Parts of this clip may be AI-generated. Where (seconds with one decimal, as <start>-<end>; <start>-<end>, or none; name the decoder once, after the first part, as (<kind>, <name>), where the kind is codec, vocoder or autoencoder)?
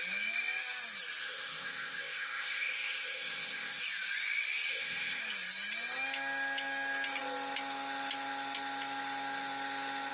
1.2-3.8 (codec, ZipCodec); 4.7-5.2